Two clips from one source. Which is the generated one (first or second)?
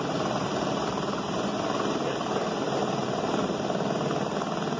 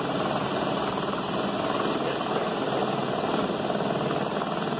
first